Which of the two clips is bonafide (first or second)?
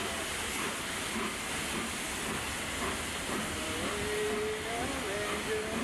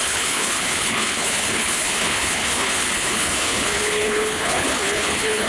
first